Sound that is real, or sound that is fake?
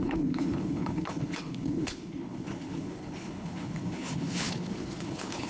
fake